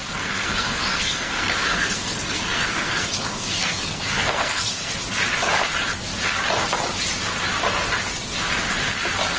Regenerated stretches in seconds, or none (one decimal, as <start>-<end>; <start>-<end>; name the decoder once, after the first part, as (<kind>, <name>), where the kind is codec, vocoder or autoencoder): 0.0-4.9 (codec, SNAC)